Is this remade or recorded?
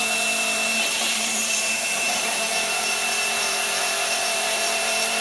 remade